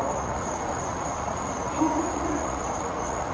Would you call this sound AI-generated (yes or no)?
yes